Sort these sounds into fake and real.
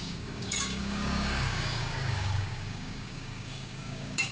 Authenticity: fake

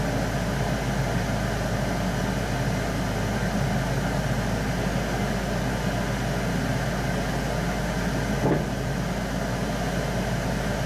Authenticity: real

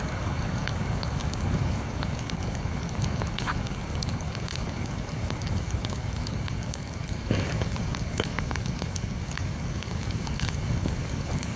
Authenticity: fake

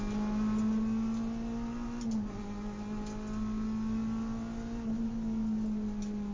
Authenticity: real